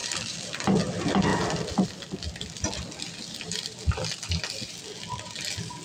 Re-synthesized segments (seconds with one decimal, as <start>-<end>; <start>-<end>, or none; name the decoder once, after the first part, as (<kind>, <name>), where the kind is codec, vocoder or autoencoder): 0.0-0.5 (vocoder, BigVGAN v2); 1.3-4.8